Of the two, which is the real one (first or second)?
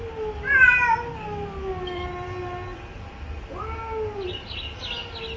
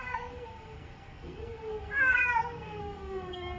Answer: first